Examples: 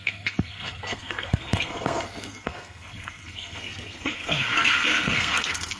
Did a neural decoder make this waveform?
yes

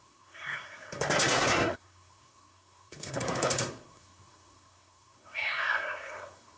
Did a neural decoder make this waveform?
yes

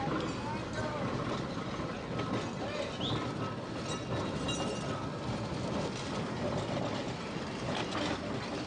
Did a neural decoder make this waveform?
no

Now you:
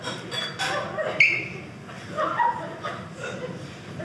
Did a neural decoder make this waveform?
no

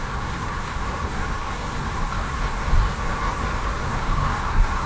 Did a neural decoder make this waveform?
yes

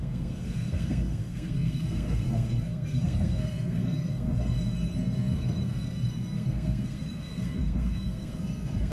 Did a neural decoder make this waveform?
yes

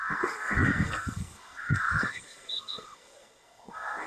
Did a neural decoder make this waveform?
yes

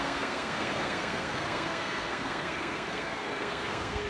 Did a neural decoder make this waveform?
yes